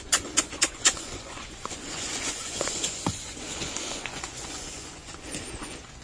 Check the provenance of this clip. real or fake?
fake